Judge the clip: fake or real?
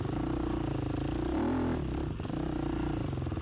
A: real